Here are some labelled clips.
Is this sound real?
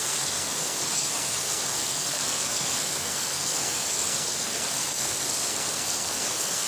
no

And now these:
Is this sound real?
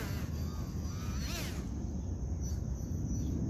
yes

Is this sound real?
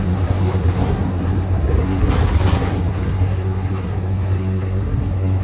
no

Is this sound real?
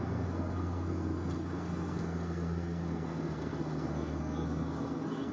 no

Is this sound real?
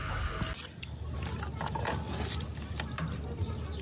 yes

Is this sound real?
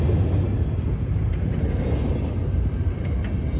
yes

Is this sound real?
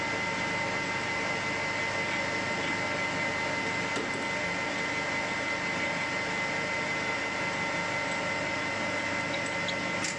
yes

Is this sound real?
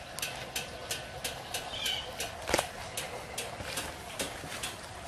yes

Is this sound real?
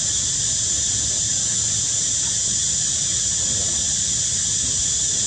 yes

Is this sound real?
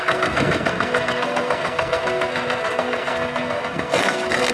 no